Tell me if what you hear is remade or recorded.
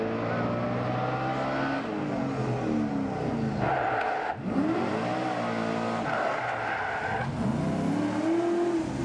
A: recorded